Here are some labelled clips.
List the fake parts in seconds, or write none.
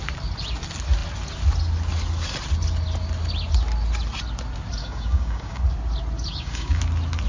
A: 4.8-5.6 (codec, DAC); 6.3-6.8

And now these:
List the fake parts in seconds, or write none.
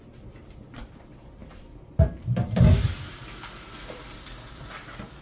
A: none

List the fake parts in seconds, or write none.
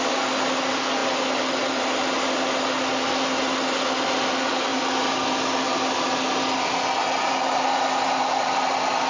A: none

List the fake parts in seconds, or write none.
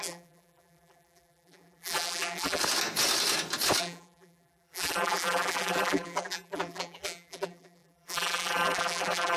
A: 0.0-2.6 (vocoder, BigVGAN v2); 3.8-9.4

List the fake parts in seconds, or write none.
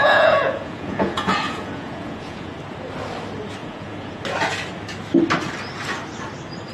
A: 0.0-2.5 (vocoder, Vocos); 3.6-4.2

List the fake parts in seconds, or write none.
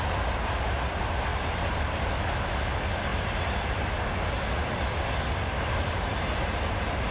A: 1.3-2.2 (vocoder, BigVGAN v2); 3.1-3.9; 4.6-6.1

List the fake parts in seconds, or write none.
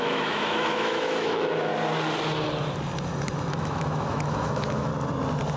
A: 0.0-1.7 (autoencoder, DAC-VAE); 3.5-4.9